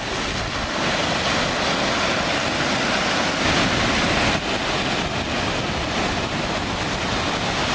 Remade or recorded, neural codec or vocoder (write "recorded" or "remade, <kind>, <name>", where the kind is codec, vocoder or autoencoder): recorded